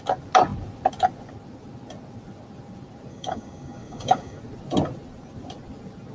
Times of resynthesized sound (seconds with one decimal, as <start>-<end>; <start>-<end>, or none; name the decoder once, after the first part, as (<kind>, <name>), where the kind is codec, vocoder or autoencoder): 3.1-4.4 (codec, DAC)

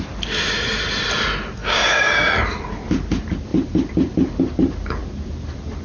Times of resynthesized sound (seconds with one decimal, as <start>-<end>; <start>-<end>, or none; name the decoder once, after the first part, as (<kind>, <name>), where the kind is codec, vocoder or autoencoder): 1.6-2.3 (codec, DAC)

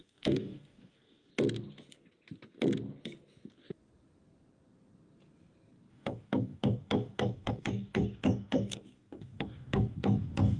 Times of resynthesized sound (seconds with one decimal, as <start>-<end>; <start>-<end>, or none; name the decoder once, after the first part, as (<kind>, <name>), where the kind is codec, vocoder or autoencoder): 0.0-1.3 (codec, DAC); 5.9-10.6

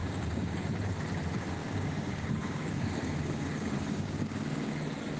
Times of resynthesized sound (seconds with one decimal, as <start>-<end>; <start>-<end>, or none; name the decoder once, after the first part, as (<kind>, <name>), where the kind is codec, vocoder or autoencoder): 0.0-0.7 (codec, DAC); 1.6-4.7

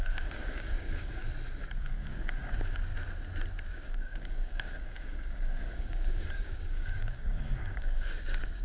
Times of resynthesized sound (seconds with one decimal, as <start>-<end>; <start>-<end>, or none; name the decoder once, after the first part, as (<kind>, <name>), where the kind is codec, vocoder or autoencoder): 0.0-1.2 (codec, DAC); 1.8-2.9; 3.7-8.6

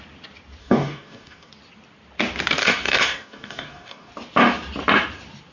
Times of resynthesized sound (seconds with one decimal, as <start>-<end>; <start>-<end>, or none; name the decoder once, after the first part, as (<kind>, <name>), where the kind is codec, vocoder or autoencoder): 0.6-1.5 (codec, DAC); 2.6-4.1